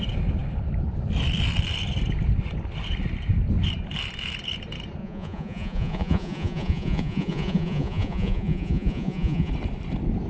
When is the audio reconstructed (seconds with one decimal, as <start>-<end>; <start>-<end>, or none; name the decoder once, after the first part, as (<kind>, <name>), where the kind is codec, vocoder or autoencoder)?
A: 5.0-9.5 (vocoder, Vocos)